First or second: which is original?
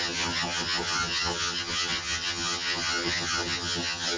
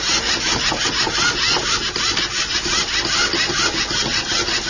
second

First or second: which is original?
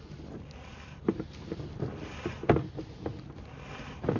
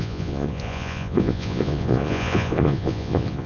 first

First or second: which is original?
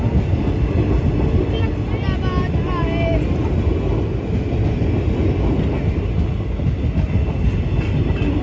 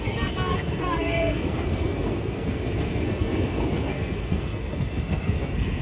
first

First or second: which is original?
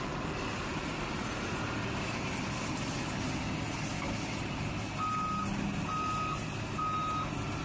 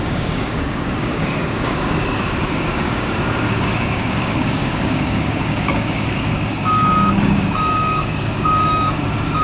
first